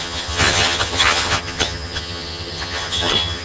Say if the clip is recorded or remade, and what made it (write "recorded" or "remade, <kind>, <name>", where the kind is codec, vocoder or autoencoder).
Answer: remade, vocoder, HiFi-GAN